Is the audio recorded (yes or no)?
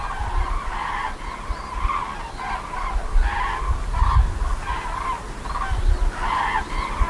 yes